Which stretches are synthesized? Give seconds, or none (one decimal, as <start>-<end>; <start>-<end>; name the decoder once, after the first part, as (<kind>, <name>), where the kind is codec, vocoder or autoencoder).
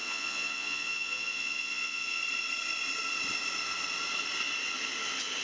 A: 0.0-2.2 (vocoder, Vocos)